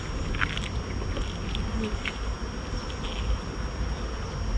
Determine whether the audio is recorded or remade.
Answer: recorded